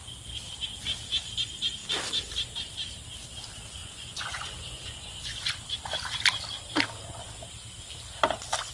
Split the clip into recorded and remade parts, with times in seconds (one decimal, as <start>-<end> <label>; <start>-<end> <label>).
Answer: 0.0-3.8 recorded; 3.8-5.5 remade; 5.5-8.7 recorded